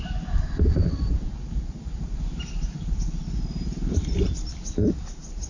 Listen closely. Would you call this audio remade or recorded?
recorded